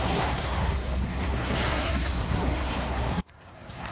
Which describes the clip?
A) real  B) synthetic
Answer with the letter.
B